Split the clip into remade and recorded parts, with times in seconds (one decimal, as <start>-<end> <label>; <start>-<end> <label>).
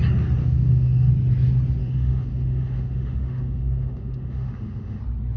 0.0-0.4 recorded; 0.4-1.1 remade; 1.1-1.8 recorded; 1.8-5.0 remade; 5.0-5.4 recorded